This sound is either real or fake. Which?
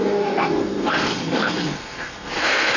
fake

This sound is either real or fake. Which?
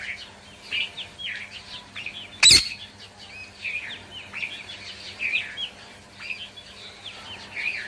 real